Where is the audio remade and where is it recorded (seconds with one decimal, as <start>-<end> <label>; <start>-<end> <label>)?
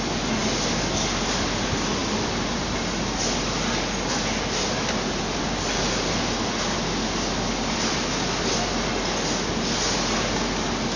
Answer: 0.0-11.0 recorded